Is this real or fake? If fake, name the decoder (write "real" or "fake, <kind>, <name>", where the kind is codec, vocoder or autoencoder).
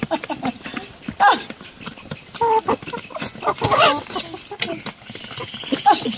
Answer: real